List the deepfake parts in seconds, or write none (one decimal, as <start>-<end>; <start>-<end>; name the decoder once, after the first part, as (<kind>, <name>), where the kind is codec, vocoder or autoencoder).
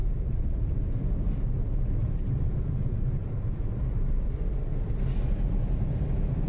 0.0-0.9 (vocoder, BigVGAN v2); 2.0-3.8